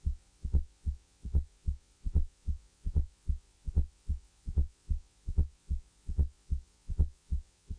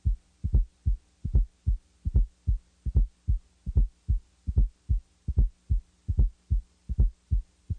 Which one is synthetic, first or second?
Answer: first